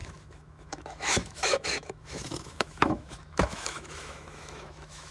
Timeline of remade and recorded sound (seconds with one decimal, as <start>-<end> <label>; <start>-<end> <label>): 0.0-5.1 remade